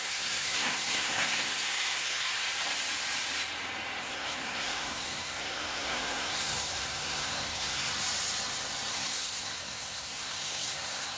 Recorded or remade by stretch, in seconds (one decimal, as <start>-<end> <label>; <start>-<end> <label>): 0.0-2.4 remade; 2.4-4.0 recorded; 4.0-7.9 remade; 7.9-8.9 recorded; 8.9-11.2 remade